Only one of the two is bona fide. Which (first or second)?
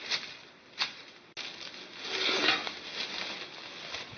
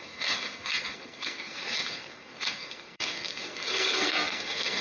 first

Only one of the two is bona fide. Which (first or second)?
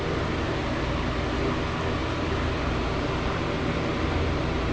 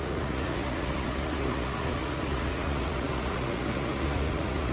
first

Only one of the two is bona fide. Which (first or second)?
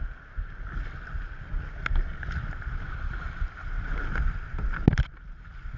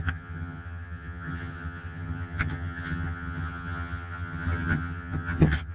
first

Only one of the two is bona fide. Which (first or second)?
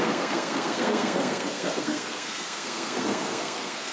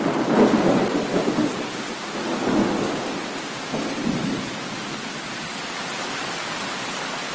second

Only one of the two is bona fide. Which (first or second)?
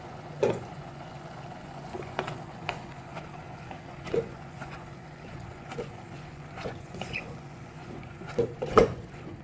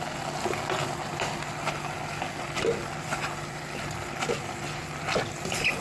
second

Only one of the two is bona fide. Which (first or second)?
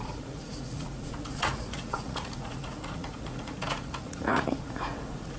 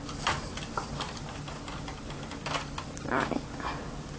second